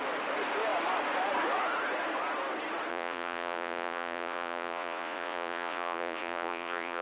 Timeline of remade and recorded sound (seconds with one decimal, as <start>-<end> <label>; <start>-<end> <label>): 0.0-2.9 recorded; 2.9-7.0 remade